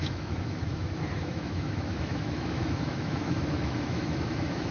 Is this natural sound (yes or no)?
no